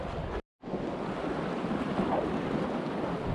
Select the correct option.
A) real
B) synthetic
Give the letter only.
A